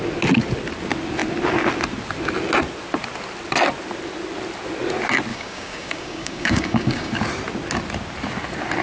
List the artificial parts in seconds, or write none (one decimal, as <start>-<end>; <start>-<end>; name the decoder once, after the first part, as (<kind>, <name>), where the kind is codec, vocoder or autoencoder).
5.3-7.1 (codec, DAC)